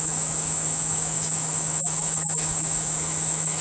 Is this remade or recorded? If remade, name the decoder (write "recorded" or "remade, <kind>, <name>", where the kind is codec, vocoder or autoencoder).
remade, autoencoder, DAC-VAE